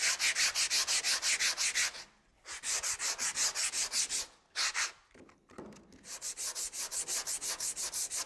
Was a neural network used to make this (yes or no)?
no